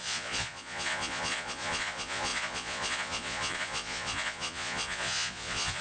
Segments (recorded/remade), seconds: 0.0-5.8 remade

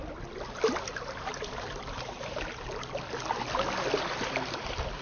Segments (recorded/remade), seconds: 0.0-5.0 recorded